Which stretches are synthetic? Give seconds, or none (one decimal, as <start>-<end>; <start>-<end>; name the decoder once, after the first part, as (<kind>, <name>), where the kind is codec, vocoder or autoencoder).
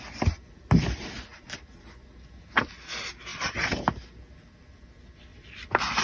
1.3-2.1 (vocoder, BigVGAN v2); 5.3-6.0